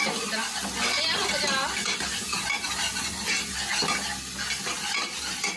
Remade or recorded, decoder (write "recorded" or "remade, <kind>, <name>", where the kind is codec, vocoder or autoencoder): recorded